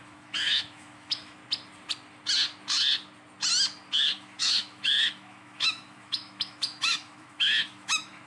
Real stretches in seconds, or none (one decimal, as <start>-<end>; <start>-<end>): 1.4-3.9